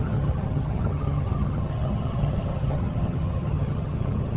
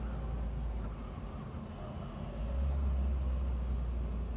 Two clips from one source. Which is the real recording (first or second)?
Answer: second